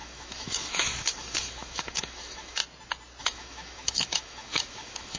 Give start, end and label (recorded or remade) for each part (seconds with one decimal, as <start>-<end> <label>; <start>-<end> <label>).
0.0-2.6 remade; 2.6-3.2 recorded; 3.2-5.2 remade